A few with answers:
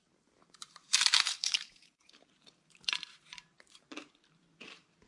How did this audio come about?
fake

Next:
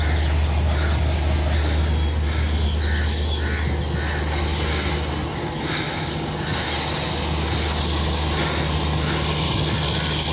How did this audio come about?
real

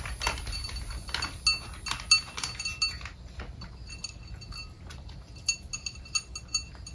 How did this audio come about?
real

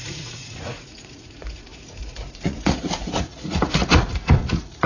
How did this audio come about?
fake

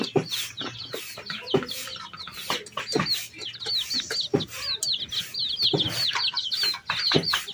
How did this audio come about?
real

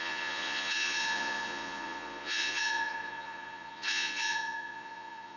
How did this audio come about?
fake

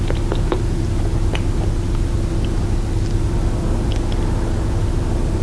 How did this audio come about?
real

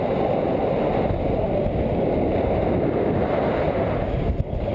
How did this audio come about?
real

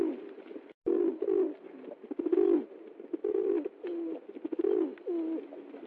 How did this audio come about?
real